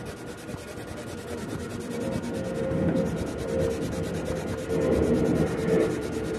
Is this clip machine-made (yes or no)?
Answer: no